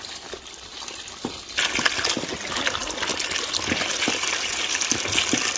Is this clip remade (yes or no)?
no